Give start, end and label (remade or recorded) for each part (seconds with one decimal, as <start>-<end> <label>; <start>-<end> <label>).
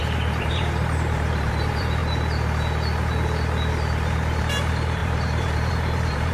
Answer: 0.0-2.0 remade; 2.0-4.4 recorded; 4.4-6.3 remade